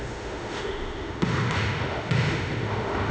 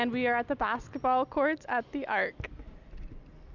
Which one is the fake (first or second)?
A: first